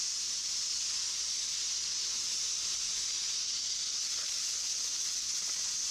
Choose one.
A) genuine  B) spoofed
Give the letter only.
A